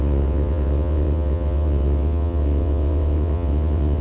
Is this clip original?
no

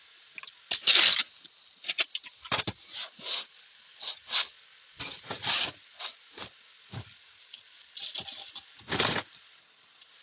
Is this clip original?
yes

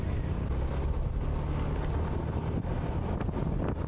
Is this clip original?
yes